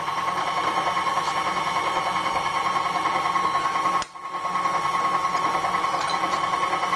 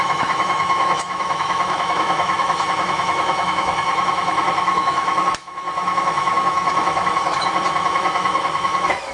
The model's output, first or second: second